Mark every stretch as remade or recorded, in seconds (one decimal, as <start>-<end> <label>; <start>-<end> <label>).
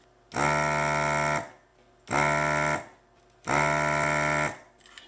0.0-1.7 recorded; 1.7-5.1 remade